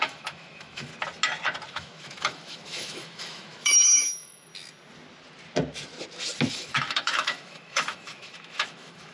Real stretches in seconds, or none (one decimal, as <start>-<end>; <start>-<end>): 0.9-1.7; 4.5-6.5